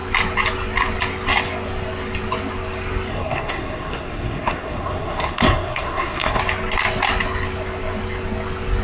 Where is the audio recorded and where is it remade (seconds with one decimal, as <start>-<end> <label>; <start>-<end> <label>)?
0.0-3.1 recorded; 3.1-6.4 remade; 6.4-8.8 recorded